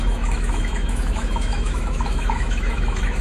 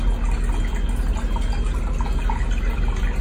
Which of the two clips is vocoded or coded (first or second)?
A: first